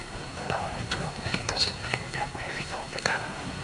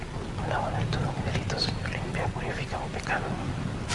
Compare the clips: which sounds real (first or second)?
second